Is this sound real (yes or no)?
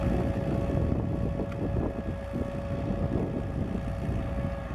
yes